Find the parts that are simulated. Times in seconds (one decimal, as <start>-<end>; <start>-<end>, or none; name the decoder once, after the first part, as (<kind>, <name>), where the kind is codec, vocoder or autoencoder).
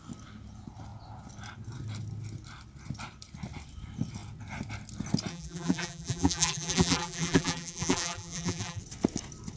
5.3-8.8 (vocoder, BigVGAN v2)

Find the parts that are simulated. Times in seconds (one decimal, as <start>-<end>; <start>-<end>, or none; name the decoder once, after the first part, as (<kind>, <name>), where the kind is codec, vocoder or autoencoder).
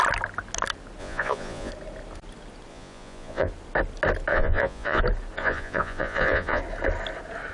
1.0-1.7 (vocoder, Vocos); 2.7-3.5; 4.3-5.0; 5.4-6.6